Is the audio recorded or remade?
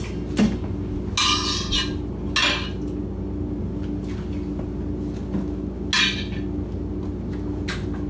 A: recorded